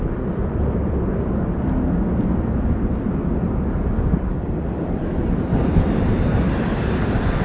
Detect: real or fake real